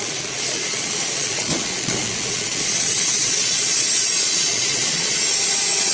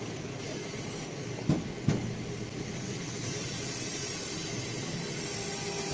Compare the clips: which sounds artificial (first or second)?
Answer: first